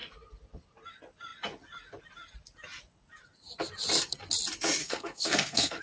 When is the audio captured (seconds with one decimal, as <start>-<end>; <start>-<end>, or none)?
0.0-4.8